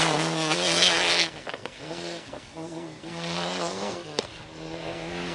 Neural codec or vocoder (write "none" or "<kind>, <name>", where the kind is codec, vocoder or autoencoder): codec, SNAC